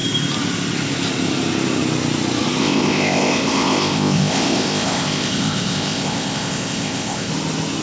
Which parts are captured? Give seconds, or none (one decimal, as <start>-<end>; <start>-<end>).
0.0-2.6; 7.3-7.8